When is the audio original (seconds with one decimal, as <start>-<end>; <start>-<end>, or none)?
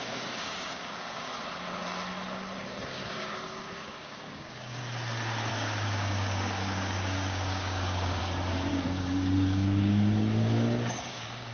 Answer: 1.3-2.8; 4.8-5.5; 8.2-8.7